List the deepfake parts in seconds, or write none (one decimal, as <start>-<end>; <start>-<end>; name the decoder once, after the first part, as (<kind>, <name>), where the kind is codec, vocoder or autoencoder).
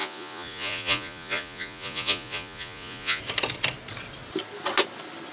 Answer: 0.0-3.2 (vocoder, Vocos)